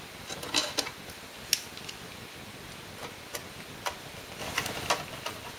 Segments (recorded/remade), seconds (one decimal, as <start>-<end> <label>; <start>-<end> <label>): 0.0-5.6 recorded